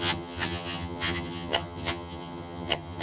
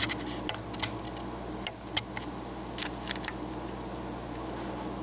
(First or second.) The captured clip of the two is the second